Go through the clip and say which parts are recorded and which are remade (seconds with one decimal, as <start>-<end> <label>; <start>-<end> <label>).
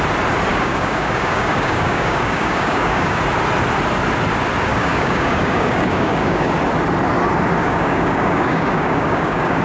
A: 0.0-0.5 recorded; 0.5-3.2 remade; 3.2-4.7 recorded; 4.7-6.5 remade; 6.5-7.6 recorded; 7.6-9.6 remade